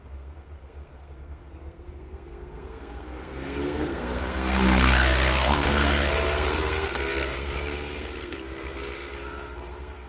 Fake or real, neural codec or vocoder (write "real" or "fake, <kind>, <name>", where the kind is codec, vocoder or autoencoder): fake, codec, SNAC